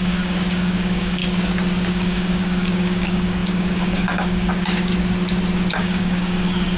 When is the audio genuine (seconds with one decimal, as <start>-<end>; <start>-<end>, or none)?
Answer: 1.2-1.9; 4.9-5.7